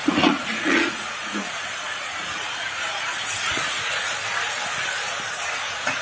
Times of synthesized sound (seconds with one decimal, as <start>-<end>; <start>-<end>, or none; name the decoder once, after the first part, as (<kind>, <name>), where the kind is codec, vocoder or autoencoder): 0.0-4.1 (vocoder, Vocos); 5.3-6.0